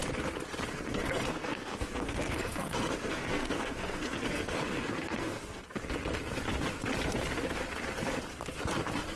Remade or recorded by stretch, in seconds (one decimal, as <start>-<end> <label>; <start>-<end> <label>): 0.0-0.7 recorded; 0.7-5.6 remade; 5.6-9.2 recorded